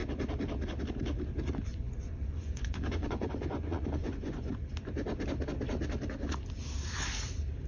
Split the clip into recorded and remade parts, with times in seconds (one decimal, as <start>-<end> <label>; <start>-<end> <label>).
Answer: 0.0-1.7 recorded; 1.7-4.6 remade; 4.6-7.7 recorded